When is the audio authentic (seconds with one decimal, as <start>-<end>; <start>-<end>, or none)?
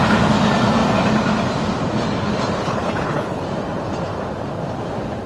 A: 0.0-2.6; 3.4-5.3